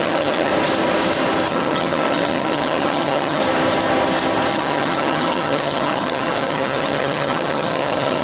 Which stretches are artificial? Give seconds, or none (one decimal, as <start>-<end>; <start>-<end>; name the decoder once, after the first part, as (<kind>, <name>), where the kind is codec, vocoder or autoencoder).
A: 0.0-0.5 (vocoder, HiFi-GAN); 1.5-3.4; 4.5-8.2